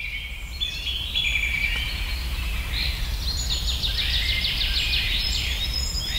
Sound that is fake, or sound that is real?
real